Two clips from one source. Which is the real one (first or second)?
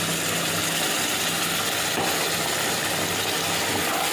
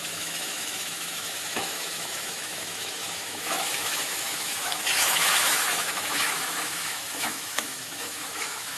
first